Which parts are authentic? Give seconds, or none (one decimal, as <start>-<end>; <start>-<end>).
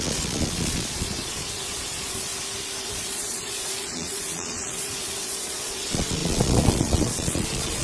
2.3-2.8